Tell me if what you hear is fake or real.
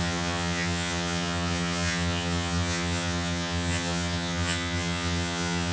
fake